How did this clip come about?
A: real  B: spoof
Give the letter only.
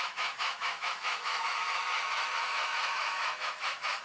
B